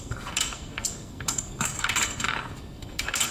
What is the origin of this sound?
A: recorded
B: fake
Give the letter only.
B